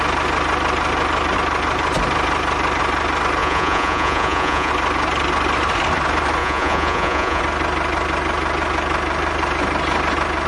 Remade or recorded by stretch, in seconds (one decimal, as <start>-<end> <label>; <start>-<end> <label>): 0.0-3.4 recorded; 3.4-4.7 remade; 4.7-6.4 recorded; 6.4-7.4 remade; 7.4-10.5 recorded